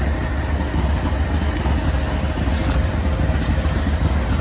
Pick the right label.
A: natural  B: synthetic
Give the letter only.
A